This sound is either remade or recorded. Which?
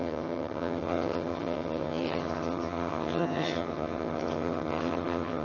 remade